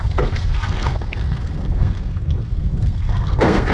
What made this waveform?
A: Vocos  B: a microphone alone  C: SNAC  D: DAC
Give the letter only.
C